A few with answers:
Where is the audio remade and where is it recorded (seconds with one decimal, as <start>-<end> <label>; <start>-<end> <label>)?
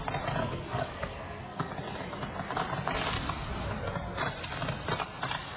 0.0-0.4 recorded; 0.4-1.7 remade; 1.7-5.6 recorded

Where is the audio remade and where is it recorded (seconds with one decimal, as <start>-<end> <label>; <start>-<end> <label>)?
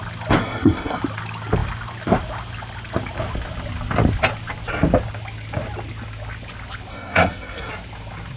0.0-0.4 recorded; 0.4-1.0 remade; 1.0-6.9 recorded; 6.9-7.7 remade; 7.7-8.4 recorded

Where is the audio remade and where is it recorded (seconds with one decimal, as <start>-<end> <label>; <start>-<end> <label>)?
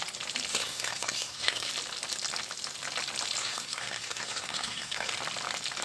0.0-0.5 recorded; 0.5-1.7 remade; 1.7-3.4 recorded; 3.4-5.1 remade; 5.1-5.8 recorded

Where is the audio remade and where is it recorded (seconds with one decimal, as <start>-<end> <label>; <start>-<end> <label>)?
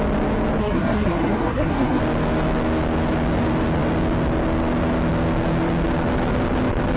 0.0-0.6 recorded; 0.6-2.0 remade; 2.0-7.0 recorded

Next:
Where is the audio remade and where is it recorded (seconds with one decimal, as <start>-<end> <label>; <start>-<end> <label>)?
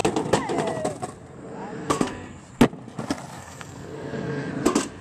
0.0-1.8 recorded; 1.8-2.4 remade; 2.4-3.3 recorded; 3.3-4.5 remade; 4.5-5.0 recorded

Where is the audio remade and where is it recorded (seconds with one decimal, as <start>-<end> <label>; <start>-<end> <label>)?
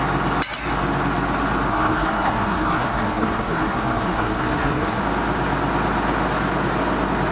0.0-1.7 recorded; 1.7-5.0 remade; 5.0-7.3 recorded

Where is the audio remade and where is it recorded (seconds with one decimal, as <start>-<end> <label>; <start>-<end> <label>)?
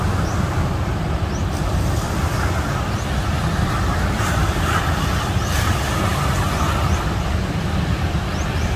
0.0-8.8 recorded